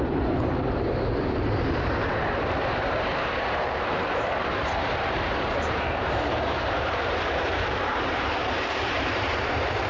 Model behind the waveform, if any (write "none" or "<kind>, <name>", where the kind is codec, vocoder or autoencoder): vocoder, BigVGAN v2